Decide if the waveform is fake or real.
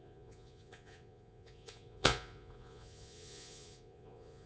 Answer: fake